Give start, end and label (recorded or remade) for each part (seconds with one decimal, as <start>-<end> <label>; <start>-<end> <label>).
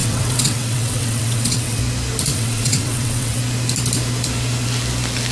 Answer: 0.0-1.8 remade; 1.8-2.3 recorded; 2.3-3.4 remade; 3.4-5.3 recorded